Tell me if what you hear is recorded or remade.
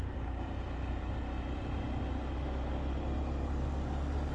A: recorded